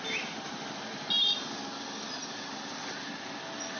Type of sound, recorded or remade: recorded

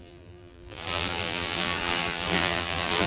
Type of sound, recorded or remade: remade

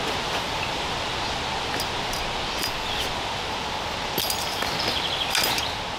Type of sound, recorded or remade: recorded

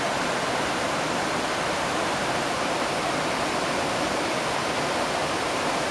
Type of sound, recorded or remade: recorded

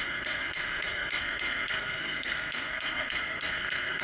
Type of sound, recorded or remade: remade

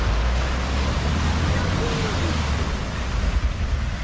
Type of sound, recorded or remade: recorded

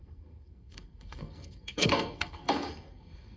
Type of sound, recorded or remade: remade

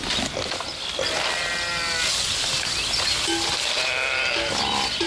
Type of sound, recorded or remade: recorded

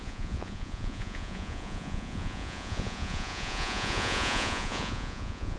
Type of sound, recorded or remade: remade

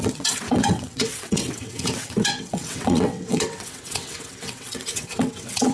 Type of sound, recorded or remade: remade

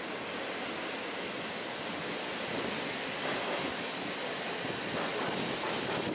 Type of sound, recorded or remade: recorded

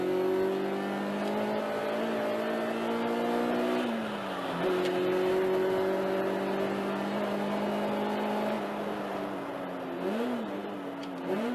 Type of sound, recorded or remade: recorded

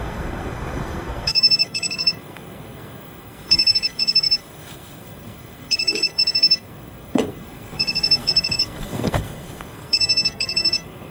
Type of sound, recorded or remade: remade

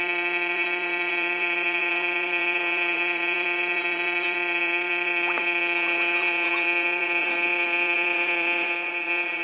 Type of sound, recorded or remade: remade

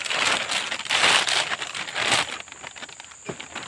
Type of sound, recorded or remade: recorded